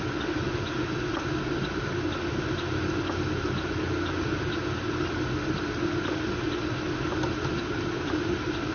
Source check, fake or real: real